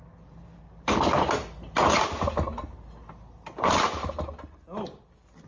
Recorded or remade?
recorded